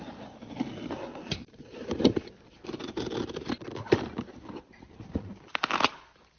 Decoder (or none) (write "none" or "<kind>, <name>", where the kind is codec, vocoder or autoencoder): vocoder, BigVGAN v2